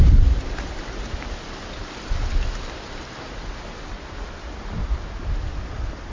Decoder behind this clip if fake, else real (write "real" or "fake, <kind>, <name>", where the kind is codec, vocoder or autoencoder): real